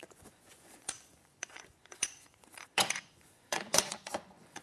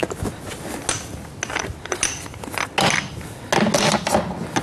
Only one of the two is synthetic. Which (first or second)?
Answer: first